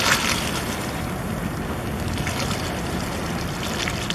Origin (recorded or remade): recorded